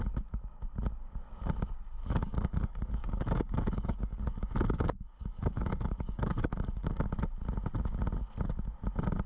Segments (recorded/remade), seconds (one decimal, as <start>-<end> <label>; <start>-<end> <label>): 0.0-2.0 recorded; 2.0-7.1 remade; 7.1-9.3 recorded